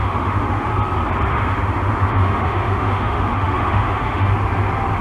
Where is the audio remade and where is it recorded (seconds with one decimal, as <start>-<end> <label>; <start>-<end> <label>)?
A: 0.0-0.7 remade; 0.7-1.3 recorded; 1.3-4.3 remade; 4.3-5.0 recorded